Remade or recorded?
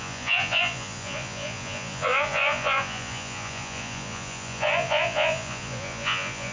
remade